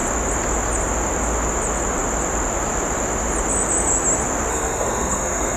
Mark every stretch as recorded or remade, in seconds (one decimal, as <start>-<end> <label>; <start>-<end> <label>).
0.0-4.5 recorded; 4.5-5.6 remade